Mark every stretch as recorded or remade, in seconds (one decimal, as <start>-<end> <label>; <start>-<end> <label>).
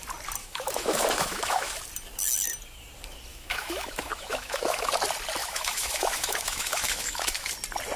0.0-0.4 recorded; 0.4-1.8 remade; 1.8-3.3 recorded; 3.3-4.9 remade; 4.9-5.4 recorded; 5.4-7.5 remade; 7.5-8.0 recorded